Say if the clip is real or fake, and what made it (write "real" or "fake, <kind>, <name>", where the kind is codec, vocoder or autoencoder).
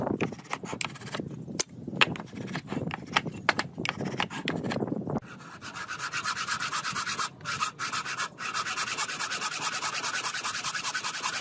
real